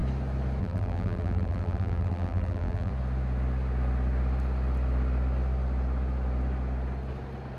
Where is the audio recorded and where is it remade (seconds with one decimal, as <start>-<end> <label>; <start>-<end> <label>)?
0.0-0.6 recorded; 0.6-2.9 remade; 2.9-7.6 recorded